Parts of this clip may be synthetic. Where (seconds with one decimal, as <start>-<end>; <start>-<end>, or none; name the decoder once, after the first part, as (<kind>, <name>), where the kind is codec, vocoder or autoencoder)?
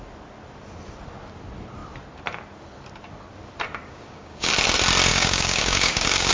3.8-4.5 (codec, DAC); 5.1-6.3